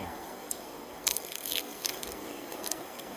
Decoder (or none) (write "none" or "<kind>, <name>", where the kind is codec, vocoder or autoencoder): codec, SNAC